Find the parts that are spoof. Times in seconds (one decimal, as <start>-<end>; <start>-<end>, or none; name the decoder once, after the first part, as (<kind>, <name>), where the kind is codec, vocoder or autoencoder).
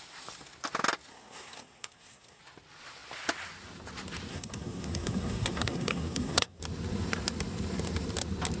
1.1-2.4 (codec, SNAC); 4.3-6.6